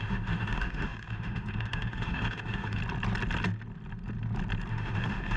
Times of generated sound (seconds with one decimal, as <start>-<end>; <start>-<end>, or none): 0.0-2.8; 4.7-5.4